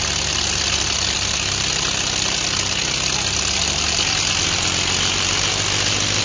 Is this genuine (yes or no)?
yes